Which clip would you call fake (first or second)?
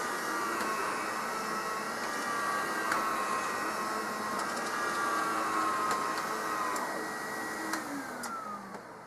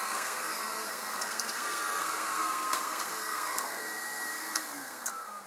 second